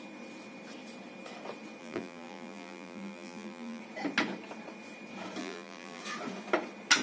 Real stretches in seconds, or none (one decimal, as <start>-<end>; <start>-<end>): 0.0-1.8; 3.8-5.4; 6.0-7.0

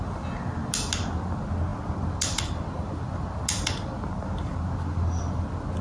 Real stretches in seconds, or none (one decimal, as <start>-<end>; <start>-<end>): 0.0-5.8

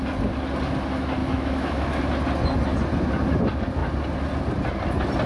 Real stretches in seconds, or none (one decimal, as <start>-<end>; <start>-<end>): 0.0-1.2; 2.0-5.3

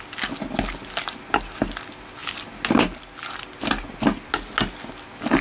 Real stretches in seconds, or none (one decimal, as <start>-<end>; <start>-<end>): 0.0-5.4

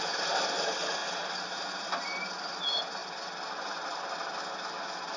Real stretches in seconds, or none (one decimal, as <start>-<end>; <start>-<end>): 0.0-5.2

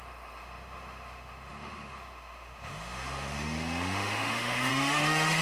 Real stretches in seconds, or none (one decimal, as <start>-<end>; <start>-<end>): none